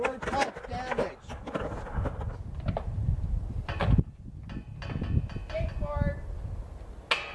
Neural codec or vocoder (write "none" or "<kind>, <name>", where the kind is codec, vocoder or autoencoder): none